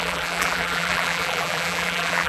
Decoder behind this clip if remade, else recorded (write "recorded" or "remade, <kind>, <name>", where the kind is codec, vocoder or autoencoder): remade, vocoder, BigVGAN v2